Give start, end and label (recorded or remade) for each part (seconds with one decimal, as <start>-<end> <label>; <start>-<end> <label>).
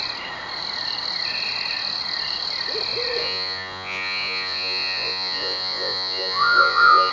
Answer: 0.0-3.2 recorded; 3.2-7.1 remade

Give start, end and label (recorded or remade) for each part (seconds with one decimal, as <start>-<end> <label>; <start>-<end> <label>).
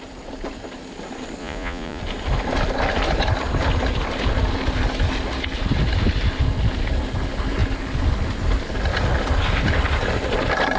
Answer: 0.0-1.4 recorded; 1.4-2.0 remade; 2.0-10.8 recorded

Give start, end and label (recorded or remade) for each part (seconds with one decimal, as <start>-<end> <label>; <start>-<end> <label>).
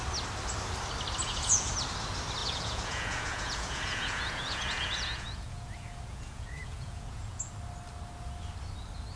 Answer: 0.0-1.2 recorded; 1.2-1.7 remade; 1.7-2.4 recorded; 2.4-7.5 remade; 7.5-9.2 recorded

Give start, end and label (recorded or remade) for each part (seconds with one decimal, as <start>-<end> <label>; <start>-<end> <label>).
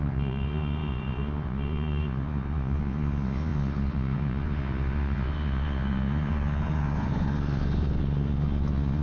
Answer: 0.0-9.0 remade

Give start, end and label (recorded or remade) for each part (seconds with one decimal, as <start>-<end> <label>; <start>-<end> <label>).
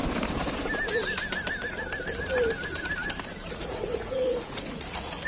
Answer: 0.0-3.5 recorded; 3.5-5.3 remade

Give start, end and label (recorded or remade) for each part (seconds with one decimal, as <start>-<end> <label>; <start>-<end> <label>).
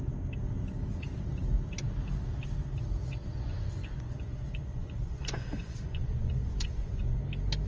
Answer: 0.0-3.2 recorded; 3.2-7.2 remade; 7.2-7.7 recorded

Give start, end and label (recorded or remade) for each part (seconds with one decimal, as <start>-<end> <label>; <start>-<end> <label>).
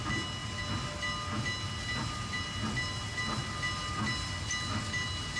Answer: 0.0-5.4 recorded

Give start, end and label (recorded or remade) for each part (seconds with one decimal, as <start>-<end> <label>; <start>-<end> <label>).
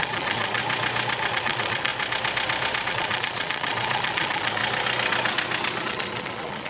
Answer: 0.0-0.6 remade; 0.6-1.3 recorded; 1.3-1.9 remade; 1.9-2.9 recorded; 2.9-4.6 remade; 4.6-5.8 recorded; 5.8-6.7 remade